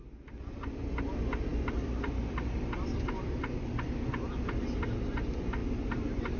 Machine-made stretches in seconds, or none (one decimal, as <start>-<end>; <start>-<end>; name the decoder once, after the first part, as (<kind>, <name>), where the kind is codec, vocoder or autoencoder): none